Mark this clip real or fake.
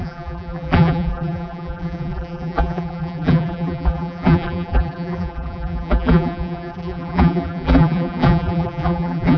fake